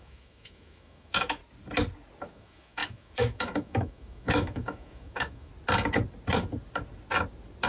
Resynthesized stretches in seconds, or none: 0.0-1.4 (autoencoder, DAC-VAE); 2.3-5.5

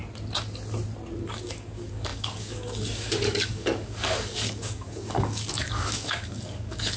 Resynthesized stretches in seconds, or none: 1.3-7.0 (codec, DAC)